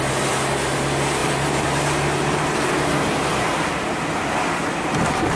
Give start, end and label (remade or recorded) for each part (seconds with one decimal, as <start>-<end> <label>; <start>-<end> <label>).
0.0-1.2 recorded; 1.2-2.7 remade; 2.7-3.3 recorded; 3.3-4.0 remade; 4.0-5.4 recorded

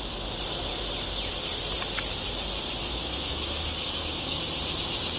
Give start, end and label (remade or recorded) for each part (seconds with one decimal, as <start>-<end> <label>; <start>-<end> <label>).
0.0-2.9 recorded; 2.9-4.5 remade; 4.5-5.2 recorded

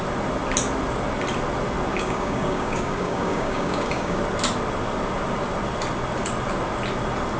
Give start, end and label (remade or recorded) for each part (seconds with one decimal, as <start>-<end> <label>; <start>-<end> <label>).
0.0-1.9 recorded; 1.9-4.2 remade; 4.2-7.4 recorded

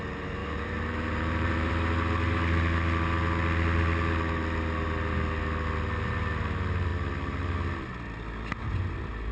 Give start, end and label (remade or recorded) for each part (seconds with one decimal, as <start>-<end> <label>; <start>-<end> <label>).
0.0-0.4 recorded; 0.4-1.7 remade; 1.7-9.3 recorded

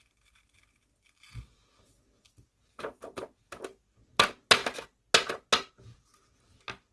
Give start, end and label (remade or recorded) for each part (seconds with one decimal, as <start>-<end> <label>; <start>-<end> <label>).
0.0-2.6 recorded; 2.6-3.4 remade; 3.4-6.9 recorded

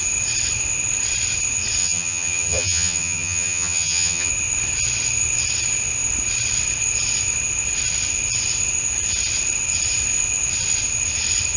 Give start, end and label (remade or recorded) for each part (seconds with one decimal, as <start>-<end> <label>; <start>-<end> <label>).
0.0-1.8 recorded; 1.8-4.3 remade; 4.3-11.6 recorded

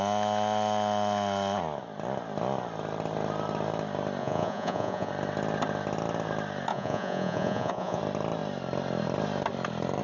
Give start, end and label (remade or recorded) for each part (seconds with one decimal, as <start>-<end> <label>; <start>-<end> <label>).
0.0-4.2 recorded; 4.2-5.1 remade; 5.1-6.7 recorded; 6.7-8.0 remade; 8.0-10.0 recorded

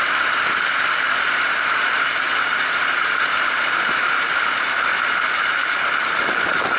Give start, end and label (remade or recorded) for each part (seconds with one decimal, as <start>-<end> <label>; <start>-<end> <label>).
0.0-2.3 remade; 2.3-3.0 recorded; 3.0-4.9 remade; 4.9-5.4 recorded; 5.4-6.8 remade